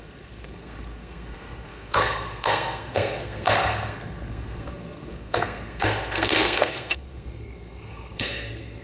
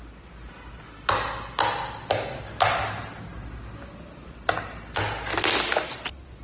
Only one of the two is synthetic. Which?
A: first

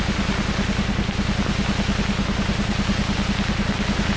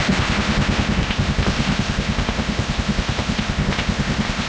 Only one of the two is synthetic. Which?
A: second